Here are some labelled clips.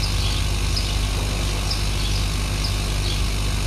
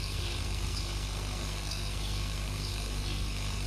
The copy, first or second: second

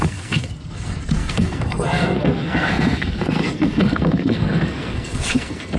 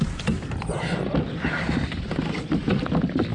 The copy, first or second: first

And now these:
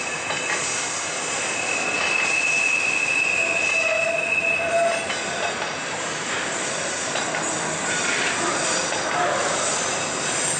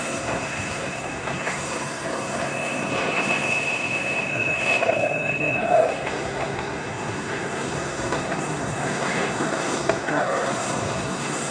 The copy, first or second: second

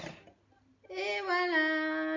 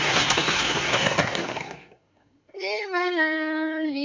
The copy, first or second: second